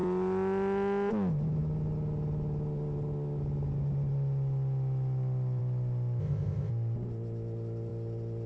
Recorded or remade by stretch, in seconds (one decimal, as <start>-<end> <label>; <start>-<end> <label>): 0.0-6.2 recorded; 6.2-6.7 remade; 6.7-8.5 recorded